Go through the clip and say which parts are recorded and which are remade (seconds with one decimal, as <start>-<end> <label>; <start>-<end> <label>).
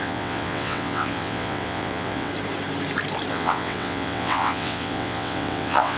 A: 0.0-2.3 remade; 2.3-3.3 recorded; 3.3-6.0 remade